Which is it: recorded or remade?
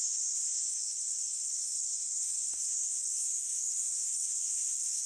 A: remade